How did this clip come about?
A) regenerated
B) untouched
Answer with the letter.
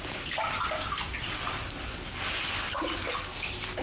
B